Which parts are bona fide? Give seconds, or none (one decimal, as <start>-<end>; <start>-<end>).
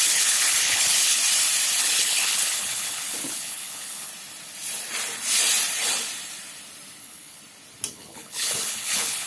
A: 1.2-1.8; 4.1-7.0; 7.4-7.9